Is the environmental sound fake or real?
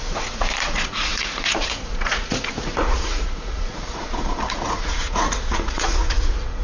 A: fake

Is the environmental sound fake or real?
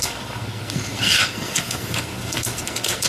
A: fake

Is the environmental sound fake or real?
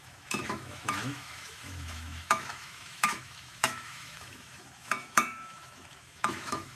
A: fake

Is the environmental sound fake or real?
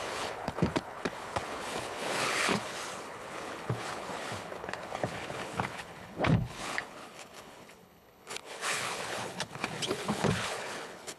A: fake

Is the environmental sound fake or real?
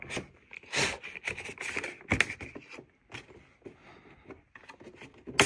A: real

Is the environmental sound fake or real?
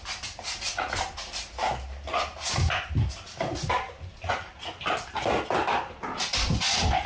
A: real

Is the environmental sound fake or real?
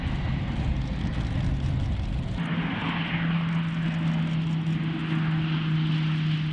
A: real